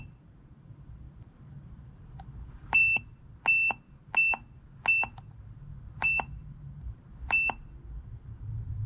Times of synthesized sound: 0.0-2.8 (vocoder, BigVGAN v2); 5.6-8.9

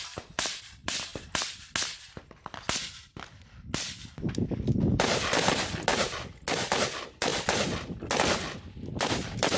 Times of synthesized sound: 0.0-1.1 (vocoder, BigVGAN v2); 4.7-5.9; 6.8-7.3; 9.1-9.6

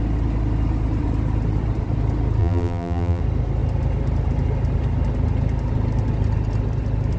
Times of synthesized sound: 2.4-3.2 (vocoder, BigVGAN v2)